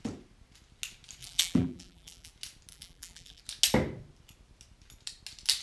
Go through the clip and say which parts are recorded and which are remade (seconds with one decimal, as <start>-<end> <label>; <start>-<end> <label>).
0.0-1.2 recorded; 1.2-2.3 remade; 2.3-2.7 recorded; 2.7-3.4 remade; 3.4-5.6 recorded

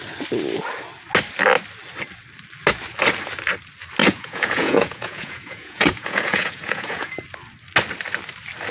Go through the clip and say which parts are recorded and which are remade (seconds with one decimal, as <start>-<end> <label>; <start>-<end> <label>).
0.0-4.0 recorded; 4.0-7.1 remade; 7.1-8.7 recorded

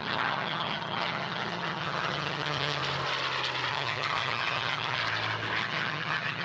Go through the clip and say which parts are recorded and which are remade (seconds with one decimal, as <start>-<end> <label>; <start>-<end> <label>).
0.0-2.8 remade; 2.8-3.7 recorded; 3.7-5.0 remade; 5.0-5.6 recorded; 5.6-6.4 remade